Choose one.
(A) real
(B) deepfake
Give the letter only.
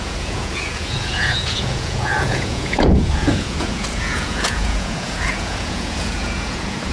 B